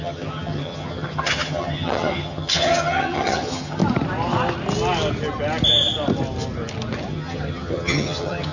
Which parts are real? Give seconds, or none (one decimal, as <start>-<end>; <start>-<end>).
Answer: 3.8-7.1